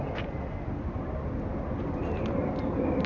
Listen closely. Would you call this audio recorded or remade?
recorded